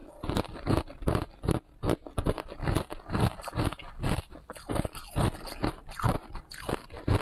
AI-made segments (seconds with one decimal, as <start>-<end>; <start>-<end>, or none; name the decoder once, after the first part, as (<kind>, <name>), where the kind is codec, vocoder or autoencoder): none